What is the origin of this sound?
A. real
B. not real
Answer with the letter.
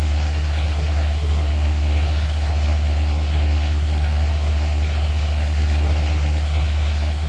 B